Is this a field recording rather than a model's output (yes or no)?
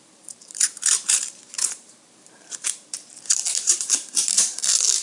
no